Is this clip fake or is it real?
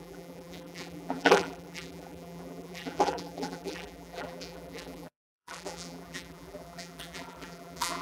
fake